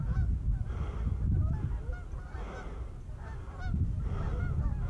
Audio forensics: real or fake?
real